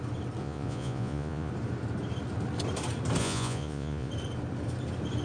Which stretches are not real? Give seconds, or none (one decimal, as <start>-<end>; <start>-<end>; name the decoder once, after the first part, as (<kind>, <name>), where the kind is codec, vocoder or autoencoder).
0.4-1.5 (vocoder, Vocos); 3.2-4.1